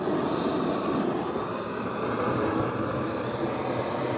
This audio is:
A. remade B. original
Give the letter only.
B